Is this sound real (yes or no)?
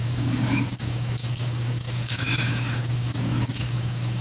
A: no